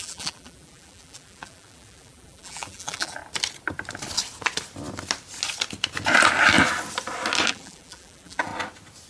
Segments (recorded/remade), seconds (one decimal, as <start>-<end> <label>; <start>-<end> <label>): 0.0-3.2 remade; 3.2-7.5 recorded; 7.5-8.5 remade; 8.5-9.1 recorded